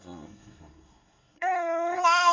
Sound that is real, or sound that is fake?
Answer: fake